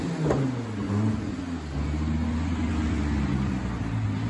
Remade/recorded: recorded